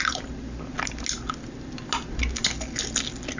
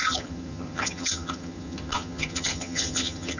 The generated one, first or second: second